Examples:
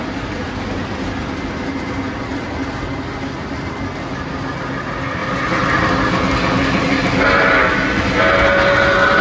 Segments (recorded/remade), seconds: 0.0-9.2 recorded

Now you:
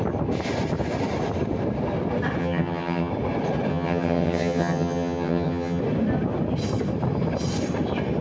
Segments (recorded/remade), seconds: 0.0-2.4 recorded; 2.4-3.1 remade; 3.1-3.7 recorded; 3.7-5.8 remade; 5.8-8.2 recorded

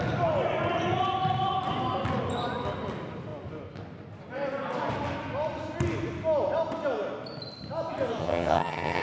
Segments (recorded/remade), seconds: 0.0-8.2 recorded; 8.2-9.0 remade

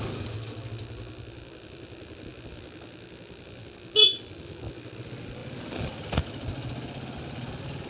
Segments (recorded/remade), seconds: 0.0-7.9 recorded

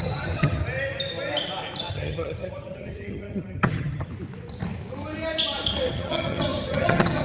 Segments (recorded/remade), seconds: 0.0-0.6 remade; 0.6-1.9 recorded; 1.9-4.1 remade; 4.1-5.9 recorded; 5.9-7.2 remade